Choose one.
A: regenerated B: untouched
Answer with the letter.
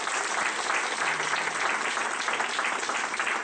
B